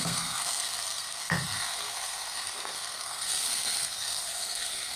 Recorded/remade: remade